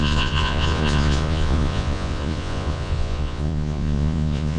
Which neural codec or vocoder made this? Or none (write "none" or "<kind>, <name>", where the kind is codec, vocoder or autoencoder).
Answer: vocoder, Vocos